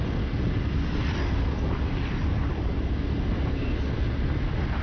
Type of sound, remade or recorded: recorded